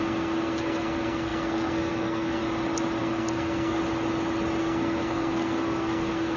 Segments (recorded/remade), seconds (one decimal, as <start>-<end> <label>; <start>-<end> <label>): 0.0-2.4 remade; 2.4-3.0 recorded; 3.0-3.8 remade; 3.8-4.6 recorded; 4.6-6.4 remade